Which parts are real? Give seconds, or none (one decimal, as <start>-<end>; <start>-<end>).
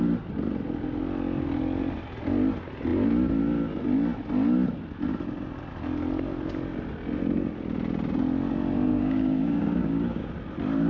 0.0-8.9; 10.3-10.9